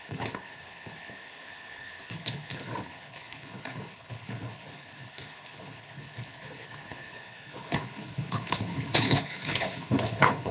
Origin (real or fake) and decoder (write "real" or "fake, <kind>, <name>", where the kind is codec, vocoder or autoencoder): fake, codec, HILCodec